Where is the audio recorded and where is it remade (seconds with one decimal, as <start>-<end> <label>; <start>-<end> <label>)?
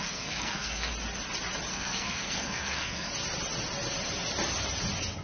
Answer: 0.0-0.9 remade; 0.9-1.7 recorded; 1.7-3.1 remade; 3.1-5.2 recorded